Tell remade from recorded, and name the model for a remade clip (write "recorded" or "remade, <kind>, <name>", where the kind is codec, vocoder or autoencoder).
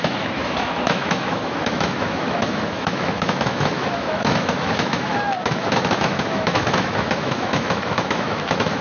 remade, autoencoder, DAC-VAE